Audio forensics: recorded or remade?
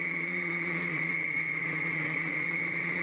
remade